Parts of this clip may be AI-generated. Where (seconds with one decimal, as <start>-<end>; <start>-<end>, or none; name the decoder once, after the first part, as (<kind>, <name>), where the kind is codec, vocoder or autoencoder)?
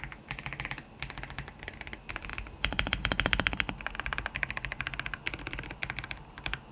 none